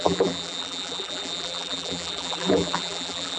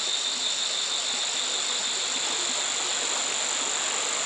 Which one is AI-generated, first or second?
first